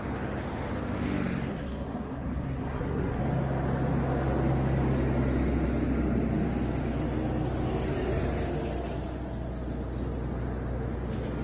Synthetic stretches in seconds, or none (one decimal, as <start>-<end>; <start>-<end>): 1.5-3.2